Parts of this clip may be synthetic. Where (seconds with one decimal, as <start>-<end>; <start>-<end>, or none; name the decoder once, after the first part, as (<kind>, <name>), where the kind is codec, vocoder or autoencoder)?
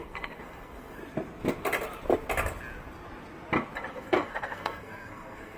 0.0-1.0 (codec, SNAC); 3.9-5.6